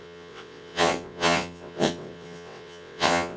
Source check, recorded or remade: remade